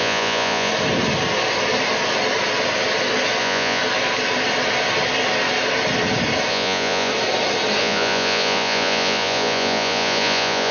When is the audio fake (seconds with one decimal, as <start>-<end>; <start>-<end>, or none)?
0.0-0.7; 3.4-3.8; 6.5-7.1; 7.8-10.7